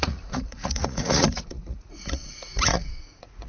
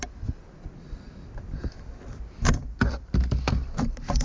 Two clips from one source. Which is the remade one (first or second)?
first